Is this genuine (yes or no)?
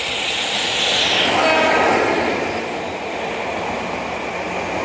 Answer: yes